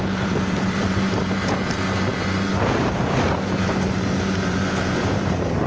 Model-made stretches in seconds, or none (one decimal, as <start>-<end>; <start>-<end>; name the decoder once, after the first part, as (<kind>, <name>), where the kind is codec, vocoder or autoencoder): 0.0-5.7 (vocoder, BigVGAN v2)